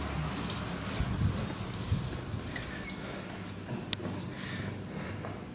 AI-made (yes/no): no